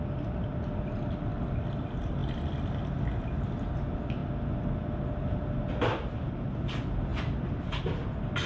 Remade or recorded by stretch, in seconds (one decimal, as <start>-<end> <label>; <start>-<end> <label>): 0.0-2.2 recorded; 2.2-3.0 remade; 3.0-8.5 recorded